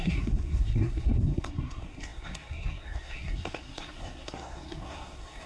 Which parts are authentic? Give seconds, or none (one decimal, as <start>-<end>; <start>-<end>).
none